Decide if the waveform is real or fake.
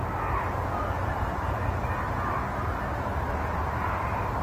real